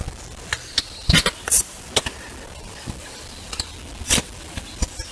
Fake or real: real